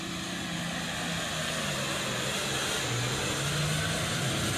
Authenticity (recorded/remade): recorded